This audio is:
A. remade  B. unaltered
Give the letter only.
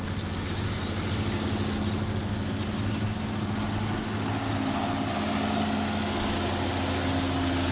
B